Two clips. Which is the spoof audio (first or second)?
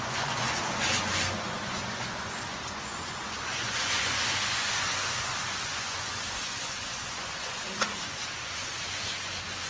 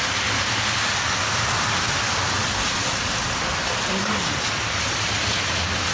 first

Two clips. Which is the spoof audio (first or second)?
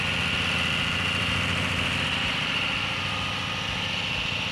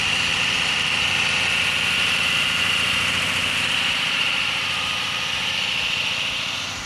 second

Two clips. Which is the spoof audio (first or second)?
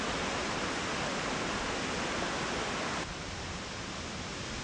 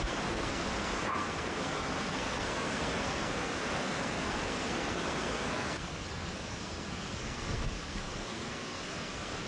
second